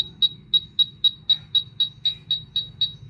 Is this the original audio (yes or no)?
yes